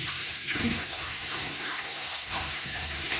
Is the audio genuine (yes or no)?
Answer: no